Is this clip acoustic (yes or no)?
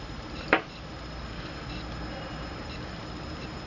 no